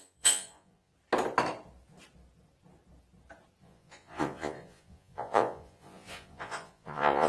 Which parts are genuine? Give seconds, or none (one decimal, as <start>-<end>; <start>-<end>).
0.9-3.6

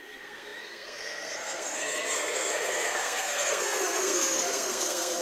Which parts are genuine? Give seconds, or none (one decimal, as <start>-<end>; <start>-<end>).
none

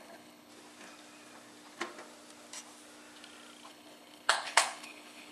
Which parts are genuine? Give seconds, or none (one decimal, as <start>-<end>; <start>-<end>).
0.5-3.7

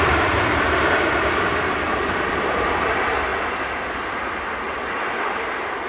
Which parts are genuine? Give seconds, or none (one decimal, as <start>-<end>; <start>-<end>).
3.3-4.3

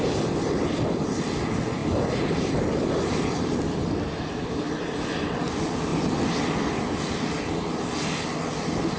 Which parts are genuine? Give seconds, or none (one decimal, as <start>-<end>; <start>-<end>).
0.0-1.8; 2.5-5.9; 6.8-9.0

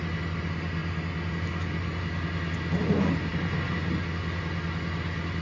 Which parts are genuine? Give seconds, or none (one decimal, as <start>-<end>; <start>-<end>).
0.0-5.4

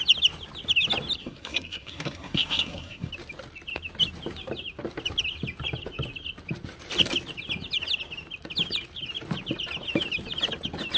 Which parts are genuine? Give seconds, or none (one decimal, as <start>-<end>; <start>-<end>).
0.0-1.2; 3.1-11.0

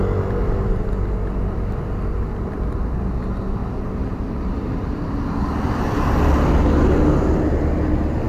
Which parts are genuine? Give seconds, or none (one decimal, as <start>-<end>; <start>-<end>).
0.0-0.4; 0.9-3.6; 5.1-8.3